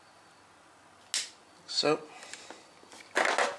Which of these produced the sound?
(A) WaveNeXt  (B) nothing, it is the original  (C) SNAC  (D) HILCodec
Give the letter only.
B